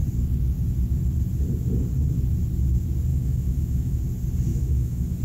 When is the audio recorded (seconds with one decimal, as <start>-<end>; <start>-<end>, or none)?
0.0-3.1; 4.0-4.5